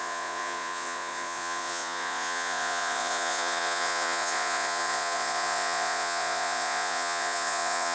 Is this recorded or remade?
remade